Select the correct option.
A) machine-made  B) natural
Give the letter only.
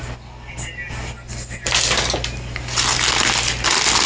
B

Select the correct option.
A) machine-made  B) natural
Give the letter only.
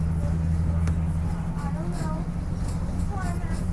B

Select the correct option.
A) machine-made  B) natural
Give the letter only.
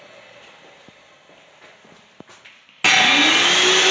B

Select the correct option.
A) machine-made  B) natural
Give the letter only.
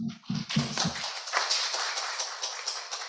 B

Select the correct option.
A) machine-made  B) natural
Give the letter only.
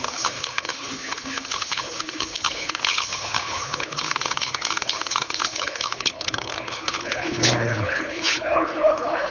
A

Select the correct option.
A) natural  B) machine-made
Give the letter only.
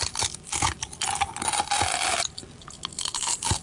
A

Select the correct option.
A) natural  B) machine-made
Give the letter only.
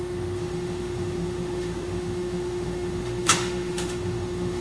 B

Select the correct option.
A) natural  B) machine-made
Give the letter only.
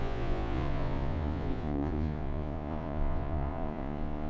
B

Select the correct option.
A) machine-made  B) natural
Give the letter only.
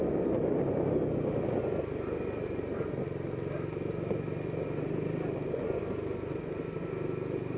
B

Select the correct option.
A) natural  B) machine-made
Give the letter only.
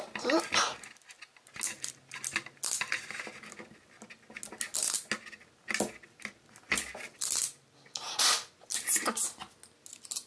A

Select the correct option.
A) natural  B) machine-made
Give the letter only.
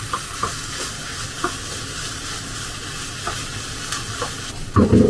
A